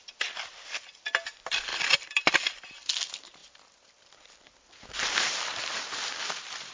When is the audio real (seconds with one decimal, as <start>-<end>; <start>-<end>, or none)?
1.7-2.2; 3.4-6.7

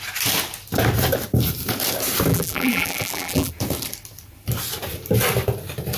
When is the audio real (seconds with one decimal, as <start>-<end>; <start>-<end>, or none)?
0.0-2.3; 3.5-6.0

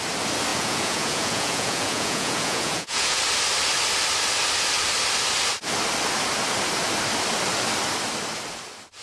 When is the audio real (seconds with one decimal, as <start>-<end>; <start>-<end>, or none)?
0.0-0.5; 3.2-9.0

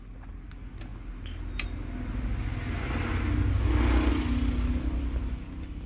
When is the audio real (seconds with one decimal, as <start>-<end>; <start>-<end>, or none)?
0.0-5.9

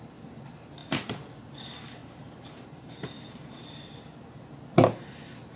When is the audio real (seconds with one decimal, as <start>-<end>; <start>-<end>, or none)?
0.0-2.0; 3.9-5.6

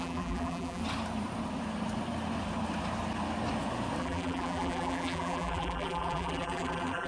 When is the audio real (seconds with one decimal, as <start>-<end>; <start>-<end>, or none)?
0.8-4.0

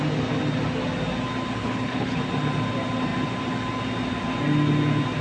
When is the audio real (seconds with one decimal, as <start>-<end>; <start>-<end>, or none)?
0.0-1.6; 2.2-5.2